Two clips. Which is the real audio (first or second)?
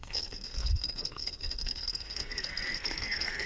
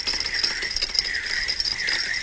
second